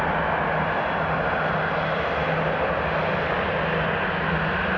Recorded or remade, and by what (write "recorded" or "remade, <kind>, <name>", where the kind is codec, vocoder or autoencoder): recorded